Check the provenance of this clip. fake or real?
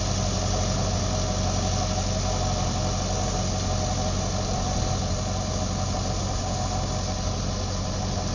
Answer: real